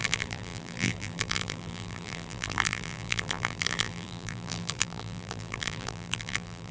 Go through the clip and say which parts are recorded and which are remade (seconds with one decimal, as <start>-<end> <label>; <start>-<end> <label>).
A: 0.0-6.7 remade